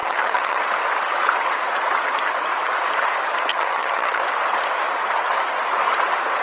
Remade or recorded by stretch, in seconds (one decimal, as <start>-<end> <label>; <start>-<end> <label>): 0.0-0.6 remade; 0.6-3.5 recorded; 3.5-4.2 remade; 4.2-6.4 recorded